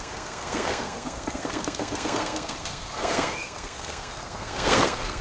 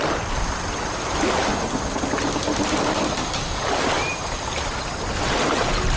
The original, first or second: second